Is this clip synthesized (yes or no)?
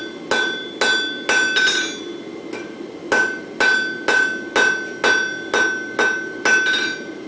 no